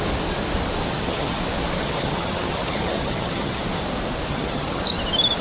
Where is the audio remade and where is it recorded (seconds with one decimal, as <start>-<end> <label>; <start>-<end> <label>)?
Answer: 0.0-0.9 recorded; 0.9-1.4 remade; 1.4-1.8 recorded; 1.8-3.6 remade; 3.6-4.3 recorded; 4.3-4.8 remade; 4.8-5.4 recorded